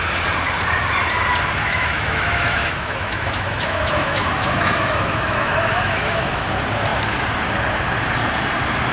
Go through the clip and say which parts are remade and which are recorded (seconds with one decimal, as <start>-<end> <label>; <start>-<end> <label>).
0.0-1.6 recorded; 1.6-6.5 remade; 6.5-8.9 recorded